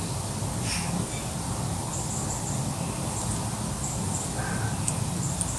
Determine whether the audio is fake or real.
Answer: real